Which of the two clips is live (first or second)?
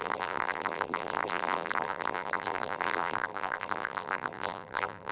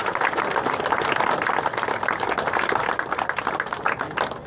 second